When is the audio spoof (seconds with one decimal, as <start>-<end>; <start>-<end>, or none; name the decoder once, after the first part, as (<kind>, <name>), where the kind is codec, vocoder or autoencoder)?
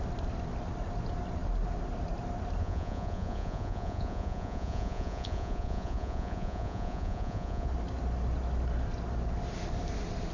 2.6-7.7 (vocoder, Vocos)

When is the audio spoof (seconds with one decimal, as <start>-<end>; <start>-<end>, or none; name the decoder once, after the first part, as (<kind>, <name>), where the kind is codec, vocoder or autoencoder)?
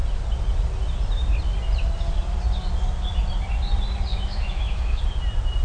4.1-5.0 (autoencoder, DAC-VAE)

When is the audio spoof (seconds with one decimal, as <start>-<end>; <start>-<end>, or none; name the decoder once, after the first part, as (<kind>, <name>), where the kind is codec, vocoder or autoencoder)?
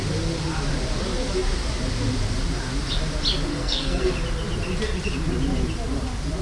3.5-4.1 (codec, SNAC)